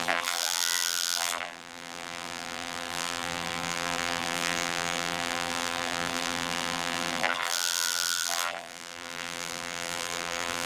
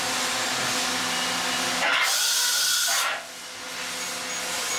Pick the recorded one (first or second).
second